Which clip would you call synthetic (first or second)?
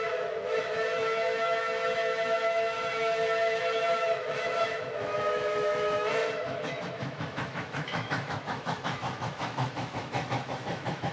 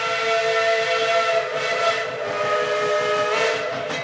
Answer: first